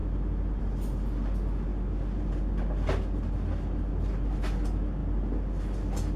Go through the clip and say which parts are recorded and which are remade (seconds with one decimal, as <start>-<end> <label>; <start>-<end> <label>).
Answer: 0.0-6.2 recorded